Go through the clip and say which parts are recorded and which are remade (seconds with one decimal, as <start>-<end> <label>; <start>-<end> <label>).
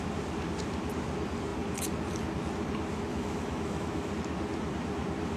0.0-3.1 recorded; 3.1-4.1 remade; 4.1-5.4 recorded